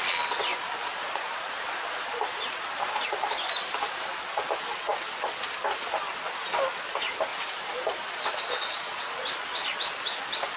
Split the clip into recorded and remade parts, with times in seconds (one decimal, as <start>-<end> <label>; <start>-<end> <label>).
0.0-0.5 recorded; 0.5-1.6 remade; 1.6-2.1 recorded; 2.1-4.1 remade; 4.1-7.3 recorded; 7.3-8.3 remade; 8.3-10.6 recorded

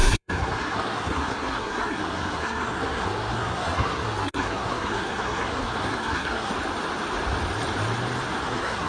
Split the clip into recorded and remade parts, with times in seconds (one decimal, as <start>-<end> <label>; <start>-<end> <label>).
0.0-6.5 remade; 6.5-8.4 recorded; 8.4-8.9 remade

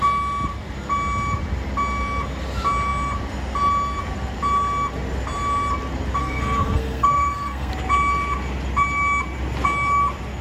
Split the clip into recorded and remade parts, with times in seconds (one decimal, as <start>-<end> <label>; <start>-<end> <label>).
0.0-6.2 recorded; 6.2-7.7 remade; 7.7-10.4 recorded

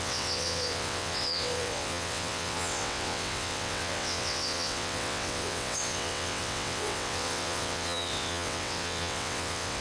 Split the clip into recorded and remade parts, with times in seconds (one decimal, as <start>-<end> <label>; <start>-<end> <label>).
0.0-9.8 remade

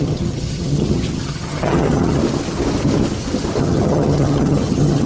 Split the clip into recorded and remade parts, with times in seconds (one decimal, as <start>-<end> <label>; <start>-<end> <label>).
0.0-2.2 remade; 2.2-3.6 recorded; 3.6-5.1 remade

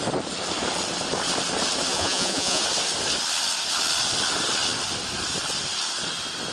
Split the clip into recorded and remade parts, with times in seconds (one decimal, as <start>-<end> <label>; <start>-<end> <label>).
0.0-1.9 recorded; 1.9-2.6 remade; 2.6-6.5 recorded

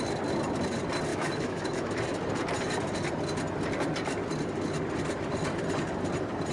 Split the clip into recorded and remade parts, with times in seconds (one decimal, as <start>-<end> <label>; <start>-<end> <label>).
0.0-1.1 recorded; 1.1-2.0 remade; 2.0-6.5 recorded